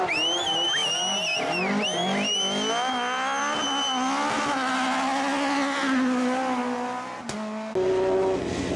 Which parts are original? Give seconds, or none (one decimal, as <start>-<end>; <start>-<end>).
0.0-8.8